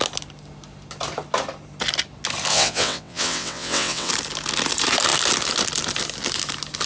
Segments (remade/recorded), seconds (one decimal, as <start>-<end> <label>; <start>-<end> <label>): 0.0-2.5 recorded; 2.5-4.1 remade; 4.1-6.9 recorded